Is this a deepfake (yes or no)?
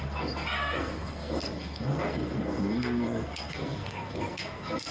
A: yes